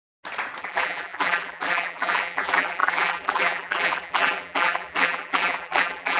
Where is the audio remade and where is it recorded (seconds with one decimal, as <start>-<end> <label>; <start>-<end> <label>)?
0.0-0.6 recorded; 0.6-6.2 remade